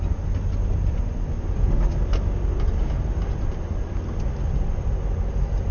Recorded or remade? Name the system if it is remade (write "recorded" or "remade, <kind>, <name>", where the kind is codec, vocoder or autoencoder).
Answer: recorded